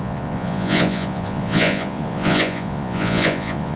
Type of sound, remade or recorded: remade